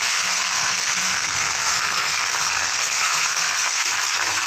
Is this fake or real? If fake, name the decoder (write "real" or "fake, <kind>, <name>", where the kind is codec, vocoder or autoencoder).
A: fake, codec, SNAC